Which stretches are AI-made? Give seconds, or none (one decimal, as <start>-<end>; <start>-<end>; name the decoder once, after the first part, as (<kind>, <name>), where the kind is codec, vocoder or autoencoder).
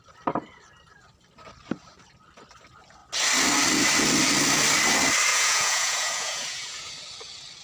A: 5.3-6.9 (vocoder, Vocos)